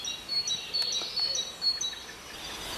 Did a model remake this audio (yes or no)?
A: no